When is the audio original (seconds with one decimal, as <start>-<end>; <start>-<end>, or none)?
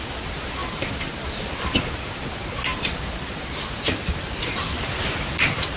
0.0-5.8